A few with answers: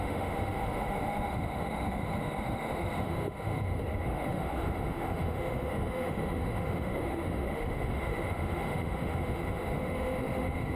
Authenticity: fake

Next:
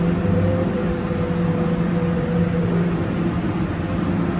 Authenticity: real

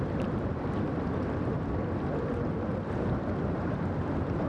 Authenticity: real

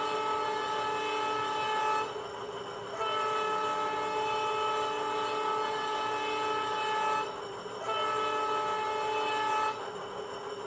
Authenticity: real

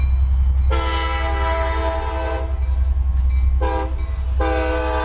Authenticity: real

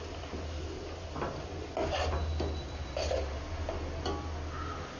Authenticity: real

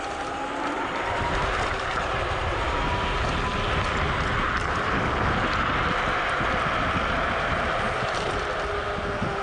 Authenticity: real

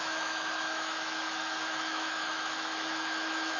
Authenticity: fake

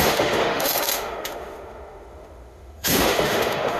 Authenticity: fake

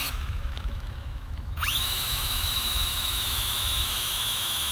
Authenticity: fake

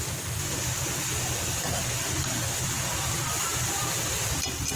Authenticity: real